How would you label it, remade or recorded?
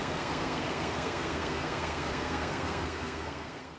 remade